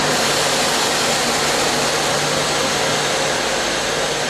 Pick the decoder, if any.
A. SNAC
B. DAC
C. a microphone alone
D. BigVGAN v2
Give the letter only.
C